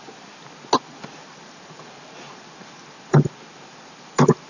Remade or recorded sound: recorded